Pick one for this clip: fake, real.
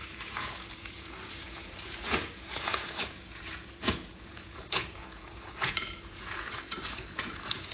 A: fake